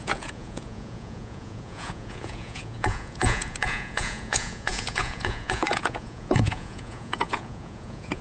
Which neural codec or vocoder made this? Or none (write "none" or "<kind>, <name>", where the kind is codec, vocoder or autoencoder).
vocoder, Vocos